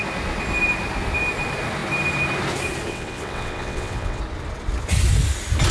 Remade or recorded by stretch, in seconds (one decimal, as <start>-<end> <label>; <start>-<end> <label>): 0.0-2.9 recorded; 2.9-4.2 remade; 4.2-5.7 recorded